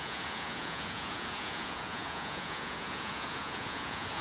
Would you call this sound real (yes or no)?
no